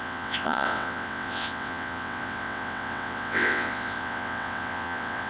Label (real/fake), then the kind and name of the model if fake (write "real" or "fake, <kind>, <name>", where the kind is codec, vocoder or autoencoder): fake, vocoder, WaveNeXt